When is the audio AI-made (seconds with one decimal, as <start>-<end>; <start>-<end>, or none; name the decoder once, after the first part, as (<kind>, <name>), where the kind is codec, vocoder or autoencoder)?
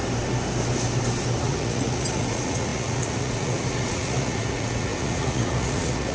1.4-6.1 (vocoder, Vocos)